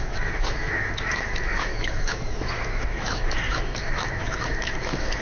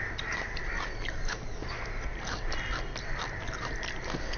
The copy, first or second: first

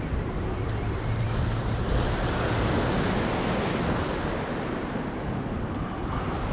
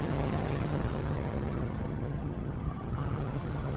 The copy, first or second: second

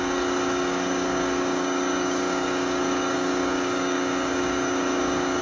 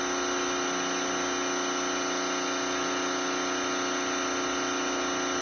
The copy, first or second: first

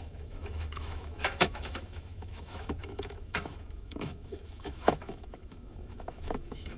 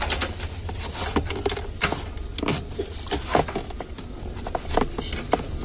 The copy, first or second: first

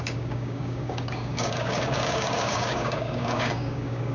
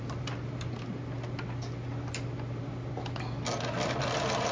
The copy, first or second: first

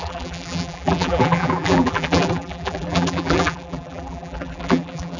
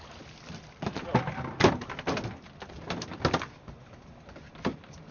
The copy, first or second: first